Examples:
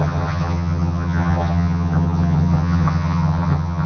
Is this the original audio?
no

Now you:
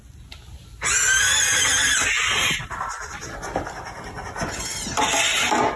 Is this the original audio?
yes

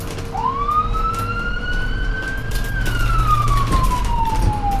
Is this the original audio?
yes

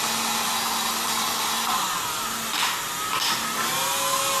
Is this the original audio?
yes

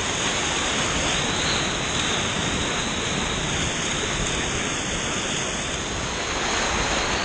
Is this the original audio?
yes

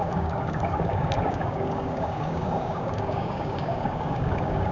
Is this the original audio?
no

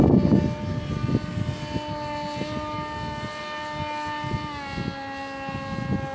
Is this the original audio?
yes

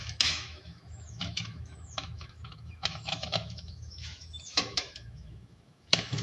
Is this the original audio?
no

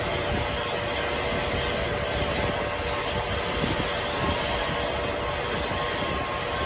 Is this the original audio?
yes